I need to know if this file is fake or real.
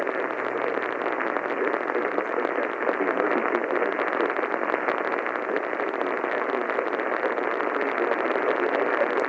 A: real